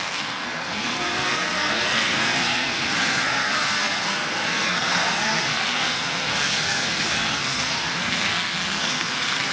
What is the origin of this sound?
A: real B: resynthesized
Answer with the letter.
B